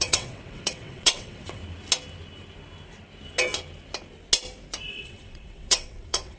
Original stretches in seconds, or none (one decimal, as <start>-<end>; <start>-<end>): 1.6-4.9

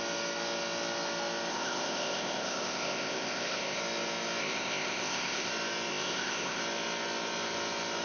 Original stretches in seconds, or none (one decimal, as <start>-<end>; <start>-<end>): 0.0-1.5; 3.8-4.4; 5.5-5.9; 6.6-8.0

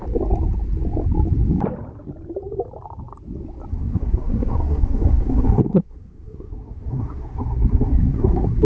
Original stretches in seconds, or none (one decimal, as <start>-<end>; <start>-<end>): 0.0-3.7

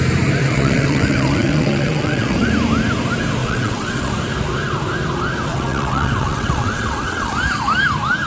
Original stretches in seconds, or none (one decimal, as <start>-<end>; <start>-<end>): 0.0-0.4; 2.5-3.4; 4.1-5.5; 7.3-8.3

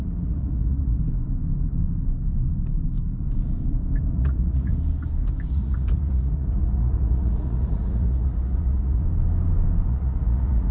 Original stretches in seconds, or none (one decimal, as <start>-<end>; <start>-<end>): 1.0-4.1; 4.7-5.5; 9.0-9.9

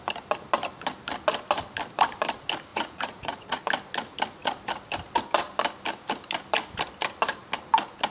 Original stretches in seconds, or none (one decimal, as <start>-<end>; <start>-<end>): 0.0-2.7; 3.6-8.1

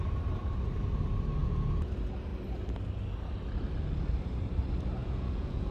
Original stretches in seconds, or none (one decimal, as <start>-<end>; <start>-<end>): 0.0-1.4; 1.9-5.0